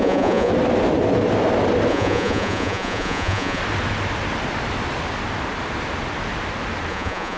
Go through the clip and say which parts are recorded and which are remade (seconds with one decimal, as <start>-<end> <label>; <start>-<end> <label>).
0.0-0.5 remade; 0.5-1.9 recorded; 1.9-3.6 remade; 3.6-6.9 recorded; 6.9-7.4 remade